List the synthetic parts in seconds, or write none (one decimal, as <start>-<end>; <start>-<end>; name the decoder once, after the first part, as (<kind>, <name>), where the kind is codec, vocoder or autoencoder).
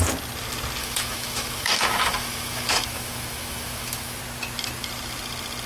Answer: 0.8-4.2 (autoencoder, DAC-VAE)